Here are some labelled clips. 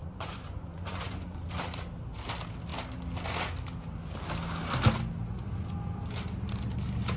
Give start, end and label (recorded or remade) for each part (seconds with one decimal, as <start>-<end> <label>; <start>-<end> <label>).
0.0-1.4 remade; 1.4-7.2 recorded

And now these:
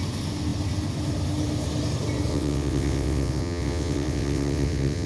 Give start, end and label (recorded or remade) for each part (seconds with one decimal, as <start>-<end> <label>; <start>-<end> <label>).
0.0-2.3 recorded; 2.3-5.1 remade

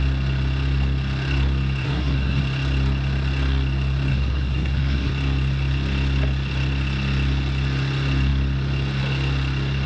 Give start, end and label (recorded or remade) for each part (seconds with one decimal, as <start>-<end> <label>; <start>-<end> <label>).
0.0-1.8 recorded; 1.8-2.4 remade; 2.4-4.1 recorded; 4.1-5.1 remade; 5.1-9.9 recorded